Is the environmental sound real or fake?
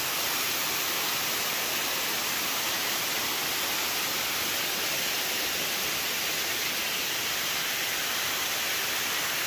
real